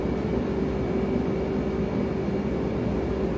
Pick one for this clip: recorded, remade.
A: recorded